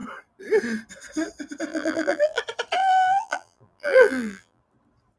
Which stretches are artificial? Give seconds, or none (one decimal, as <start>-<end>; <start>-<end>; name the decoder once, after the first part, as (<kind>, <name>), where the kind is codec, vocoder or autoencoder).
1.7-2.4 (vocoder, BigVGAN v2); 2.8-4.6